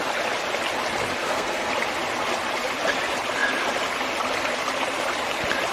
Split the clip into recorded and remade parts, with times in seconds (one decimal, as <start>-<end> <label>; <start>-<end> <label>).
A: 0.0-1.2 recorded; 1.2-1.7 remade; 1.7-5.7 recorded